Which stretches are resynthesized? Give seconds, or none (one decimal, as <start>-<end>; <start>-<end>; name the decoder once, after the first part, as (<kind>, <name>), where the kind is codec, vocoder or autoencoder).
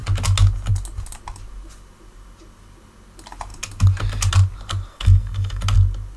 4.9-5.6 (codec, SNAC)